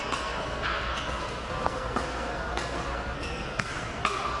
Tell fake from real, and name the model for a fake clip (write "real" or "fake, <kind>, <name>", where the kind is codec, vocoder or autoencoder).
fake, codec, SNAC